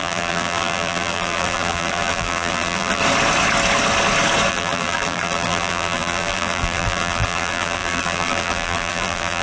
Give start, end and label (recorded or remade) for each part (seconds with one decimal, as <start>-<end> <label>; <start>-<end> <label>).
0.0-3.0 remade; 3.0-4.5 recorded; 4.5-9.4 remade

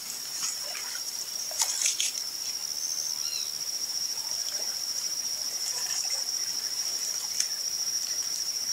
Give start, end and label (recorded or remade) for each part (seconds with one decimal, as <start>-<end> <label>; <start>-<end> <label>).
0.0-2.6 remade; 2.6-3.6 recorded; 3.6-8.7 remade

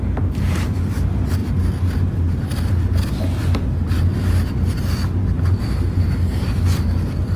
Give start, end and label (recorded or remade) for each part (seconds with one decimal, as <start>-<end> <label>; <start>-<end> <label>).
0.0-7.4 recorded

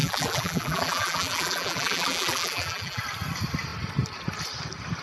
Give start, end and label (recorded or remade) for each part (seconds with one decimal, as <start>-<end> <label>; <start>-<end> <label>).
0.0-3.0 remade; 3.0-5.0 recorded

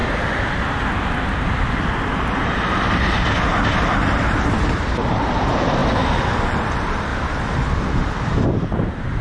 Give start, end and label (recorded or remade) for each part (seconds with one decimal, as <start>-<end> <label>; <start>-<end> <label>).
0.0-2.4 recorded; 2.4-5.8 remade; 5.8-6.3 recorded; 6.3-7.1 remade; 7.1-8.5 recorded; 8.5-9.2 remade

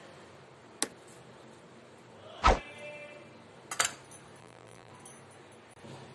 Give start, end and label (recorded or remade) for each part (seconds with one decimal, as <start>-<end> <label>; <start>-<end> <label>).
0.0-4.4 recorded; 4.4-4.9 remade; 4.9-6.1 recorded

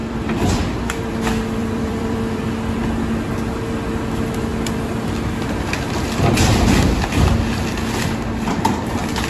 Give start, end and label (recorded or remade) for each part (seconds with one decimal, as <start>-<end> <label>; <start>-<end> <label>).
0.0-0.8 remade; 0.8-1.6 recorded; 1.6-2.4 remade; 2.4-9.3 recorded

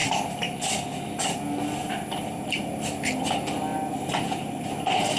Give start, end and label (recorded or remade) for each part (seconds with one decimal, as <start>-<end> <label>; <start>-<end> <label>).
0.0-0.7 recorded; 0.7-1.8 remade; 1.8-5.2 recorded